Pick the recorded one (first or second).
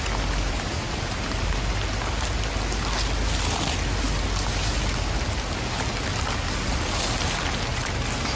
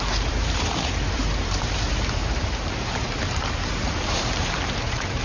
first